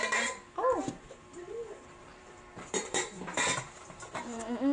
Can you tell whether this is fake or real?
fake